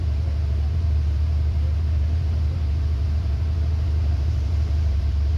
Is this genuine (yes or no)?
no